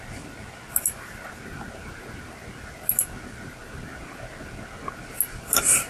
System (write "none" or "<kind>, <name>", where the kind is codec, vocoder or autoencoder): none